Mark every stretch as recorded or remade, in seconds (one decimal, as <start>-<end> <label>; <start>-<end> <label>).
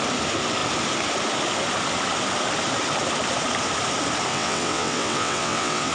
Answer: 0.0-4.3 recorded; 4.3-5.9 remade